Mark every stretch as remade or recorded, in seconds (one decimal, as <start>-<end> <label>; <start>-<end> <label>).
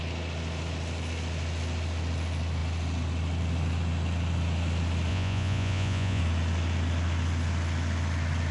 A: 0.0-5.1 recorded; 5.1-6.2 remade; 6.2-8.5 recorded